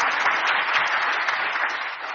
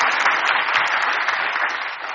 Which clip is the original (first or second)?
second